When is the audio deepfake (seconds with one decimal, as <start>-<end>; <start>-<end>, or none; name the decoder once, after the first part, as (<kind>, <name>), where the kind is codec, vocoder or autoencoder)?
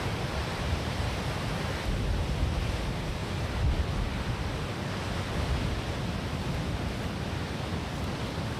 0.4-1.6 (vocoder, BigVGAN v2)